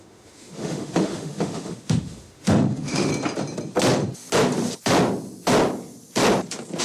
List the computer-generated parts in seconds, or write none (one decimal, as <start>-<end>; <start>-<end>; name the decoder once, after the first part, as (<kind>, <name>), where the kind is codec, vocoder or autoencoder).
0.0-3.1 (autoencoder, DAC-VAE)